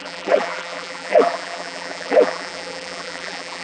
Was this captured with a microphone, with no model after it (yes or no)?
no